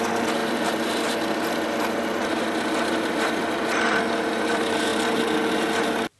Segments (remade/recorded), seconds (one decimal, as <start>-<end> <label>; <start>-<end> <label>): 0.0-6.2 recorded